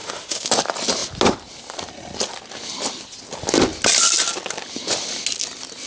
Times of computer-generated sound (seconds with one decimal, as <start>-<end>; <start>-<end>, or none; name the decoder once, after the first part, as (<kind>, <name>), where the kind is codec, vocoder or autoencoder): 0.0-0.5 (autoencoder, DAC-VAE)